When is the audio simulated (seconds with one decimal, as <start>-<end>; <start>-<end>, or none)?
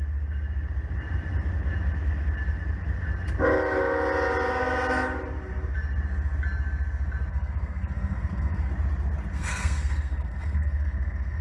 7.3-8.7; 9.3-11.4